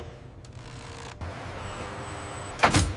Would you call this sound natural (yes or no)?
yes